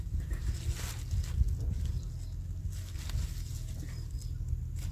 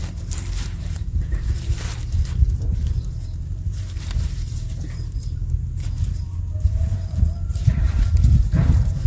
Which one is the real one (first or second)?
first